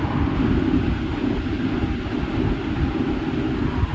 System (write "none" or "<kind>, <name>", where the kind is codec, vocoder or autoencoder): none